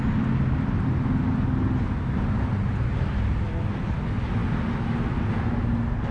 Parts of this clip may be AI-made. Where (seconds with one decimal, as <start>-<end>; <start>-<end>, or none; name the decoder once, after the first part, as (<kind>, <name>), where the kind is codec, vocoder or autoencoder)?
none